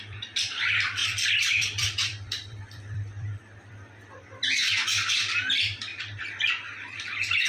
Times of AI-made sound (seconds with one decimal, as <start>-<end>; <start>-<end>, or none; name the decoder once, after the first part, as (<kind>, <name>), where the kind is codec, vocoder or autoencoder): 0.0-7.5 (vocoder, BigVGAN v2)